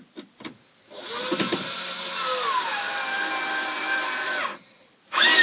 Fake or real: real